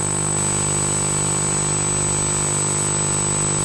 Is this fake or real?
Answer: real